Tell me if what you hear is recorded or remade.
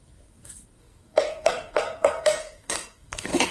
remade